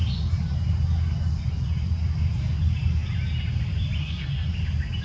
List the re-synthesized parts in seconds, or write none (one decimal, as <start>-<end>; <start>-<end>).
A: 4.0-4.5